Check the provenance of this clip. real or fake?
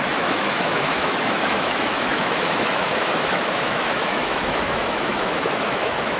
fake